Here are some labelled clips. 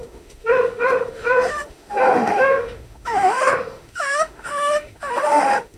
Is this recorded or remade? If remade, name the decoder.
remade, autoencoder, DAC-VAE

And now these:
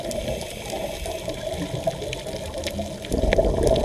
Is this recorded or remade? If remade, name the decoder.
recorded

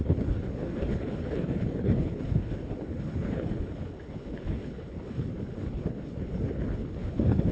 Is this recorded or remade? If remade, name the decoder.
remade, codec, HILCodec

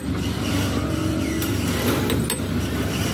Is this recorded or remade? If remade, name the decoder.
recorded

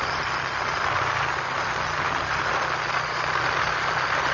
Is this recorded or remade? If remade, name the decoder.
recorded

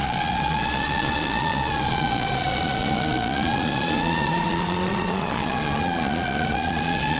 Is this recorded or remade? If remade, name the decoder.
remade, vocoder, Vocos